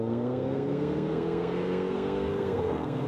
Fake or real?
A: fake